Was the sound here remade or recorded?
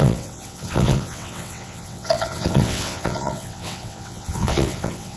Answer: remade